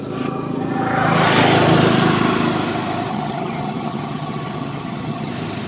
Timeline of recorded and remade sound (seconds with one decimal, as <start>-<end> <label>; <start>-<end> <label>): 0.0-3.1 recorded; 3.1-5.3 remade; 5.3-5.7 recorded